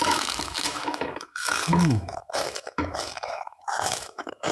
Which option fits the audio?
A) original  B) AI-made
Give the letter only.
B